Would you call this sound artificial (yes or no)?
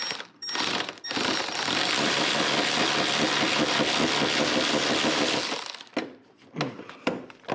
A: no